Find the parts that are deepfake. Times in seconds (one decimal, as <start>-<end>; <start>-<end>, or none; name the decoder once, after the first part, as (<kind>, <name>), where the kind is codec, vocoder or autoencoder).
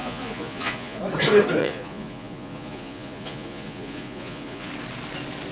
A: 0.0-1.0 (vocoder, Vocos); 1.6-4.7